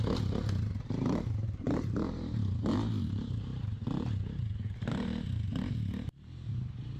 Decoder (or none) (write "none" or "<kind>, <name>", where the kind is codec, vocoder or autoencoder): vocoder, BigVGAN v2